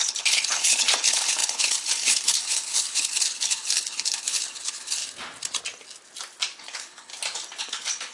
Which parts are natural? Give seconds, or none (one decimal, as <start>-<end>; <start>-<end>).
5.0-6.6; 7.1-7.6